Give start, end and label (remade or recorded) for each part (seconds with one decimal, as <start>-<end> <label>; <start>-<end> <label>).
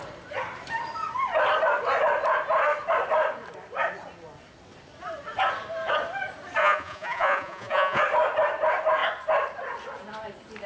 0.0-6.6 recorded; 6.6-8.0 remade; 8.0-10.7 recorded